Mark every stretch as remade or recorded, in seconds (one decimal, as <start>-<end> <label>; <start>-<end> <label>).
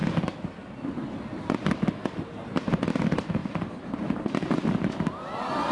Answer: 0.0-2.2 recorded; 2.2-5.7 remade